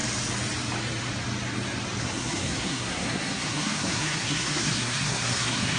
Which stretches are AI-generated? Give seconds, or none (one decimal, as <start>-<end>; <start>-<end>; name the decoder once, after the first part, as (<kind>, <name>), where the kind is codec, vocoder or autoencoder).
2.0-5.8 (codec, SNAC)